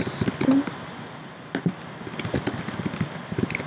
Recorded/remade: recorded